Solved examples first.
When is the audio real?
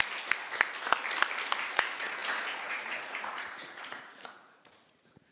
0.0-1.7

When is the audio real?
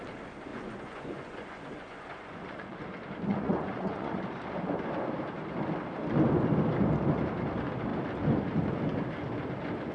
0.0-0.5; 2.8-3.3; 4.2-9.9